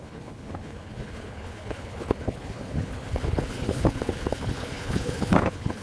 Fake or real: fake